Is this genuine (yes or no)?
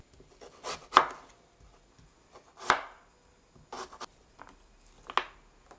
yes